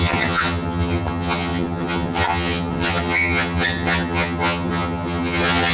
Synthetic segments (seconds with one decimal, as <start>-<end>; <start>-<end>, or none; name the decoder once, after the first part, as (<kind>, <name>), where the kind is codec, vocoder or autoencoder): 0.0-5.7 (vocoder, HiFi-GAN)